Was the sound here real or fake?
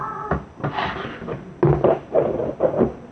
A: real